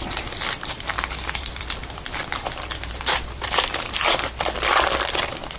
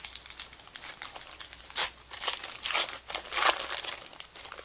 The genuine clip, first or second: second